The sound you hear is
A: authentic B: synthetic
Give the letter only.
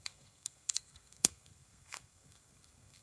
B